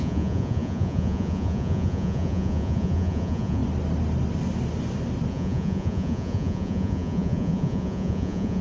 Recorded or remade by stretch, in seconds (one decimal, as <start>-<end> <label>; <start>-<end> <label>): 0.0-3.6 remade; 3.6-5.3 recorded; 5.3-8.6 remade